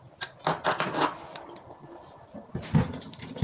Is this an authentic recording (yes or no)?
yes